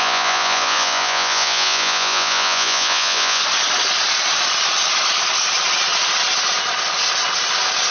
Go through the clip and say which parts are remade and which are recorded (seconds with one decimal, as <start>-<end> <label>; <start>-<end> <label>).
0.0-3.4 remade; 3.4-7.9 recorded